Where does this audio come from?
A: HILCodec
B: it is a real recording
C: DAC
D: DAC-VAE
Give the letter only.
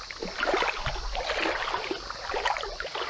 B